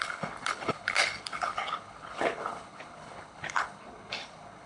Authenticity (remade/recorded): remade